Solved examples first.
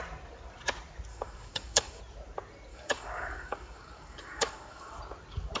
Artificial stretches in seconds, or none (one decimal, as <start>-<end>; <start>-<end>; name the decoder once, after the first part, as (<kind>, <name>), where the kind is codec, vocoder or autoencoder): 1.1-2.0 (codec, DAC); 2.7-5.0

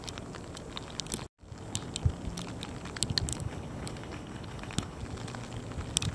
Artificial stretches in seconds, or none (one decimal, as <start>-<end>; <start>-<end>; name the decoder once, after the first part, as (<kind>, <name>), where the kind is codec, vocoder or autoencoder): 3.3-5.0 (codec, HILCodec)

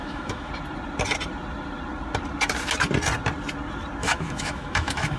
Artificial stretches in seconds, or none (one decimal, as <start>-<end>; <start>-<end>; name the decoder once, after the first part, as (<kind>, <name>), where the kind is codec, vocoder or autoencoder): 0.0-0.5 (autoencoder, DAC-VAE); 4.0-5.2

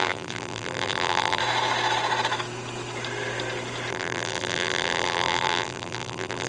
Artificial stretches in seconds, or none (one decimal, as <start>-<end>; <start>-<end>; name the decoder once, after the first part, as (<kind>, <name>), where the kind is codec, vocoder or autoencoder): 0.0-1.4 (vocoder, BigVGAN v2); 3.9-6.5